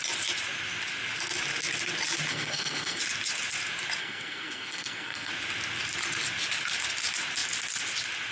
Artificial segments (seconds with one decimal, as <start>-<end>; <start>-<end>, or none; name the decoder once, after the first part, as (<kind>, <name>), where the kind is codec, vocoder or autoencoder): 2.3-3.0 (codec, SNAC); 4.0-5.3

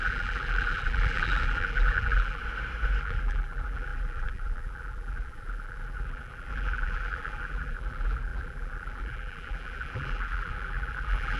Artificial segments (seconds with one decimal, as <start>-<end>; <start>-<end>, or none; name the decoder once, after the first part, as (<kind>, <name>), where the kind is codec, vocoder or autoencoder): 0.0-2.4 (vocoder, BigVGAN v2); 3.0-11.4

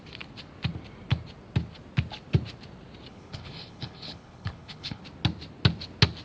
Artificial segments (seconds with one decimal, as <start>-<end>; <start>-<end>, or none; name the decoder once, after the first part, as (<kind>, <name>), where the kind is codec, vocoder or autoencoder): 3.1-5.0 (codec, HILCodec)